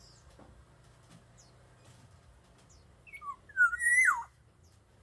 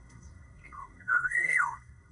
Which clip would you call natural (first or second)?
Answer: first